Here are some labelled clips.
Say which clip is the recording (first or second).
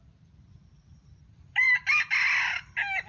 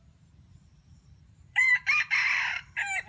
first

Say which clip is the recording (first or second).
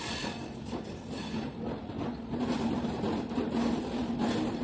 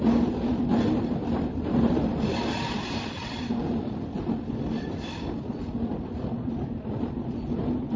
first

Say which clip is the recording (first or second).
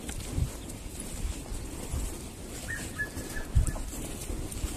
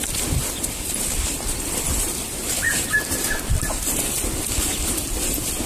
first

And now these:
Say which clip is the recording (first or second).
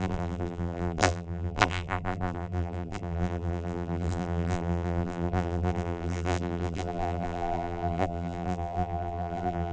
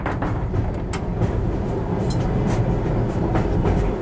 second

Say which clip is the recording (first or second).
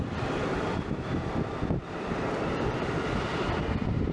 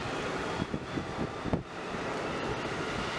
second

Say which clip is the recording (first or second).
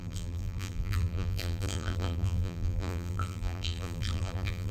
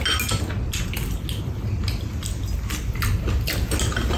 second